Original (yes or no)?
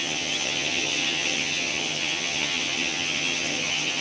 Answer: no